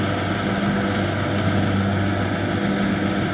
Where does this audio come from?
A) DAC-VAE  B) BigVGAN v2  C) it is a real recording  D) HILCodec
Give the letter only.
C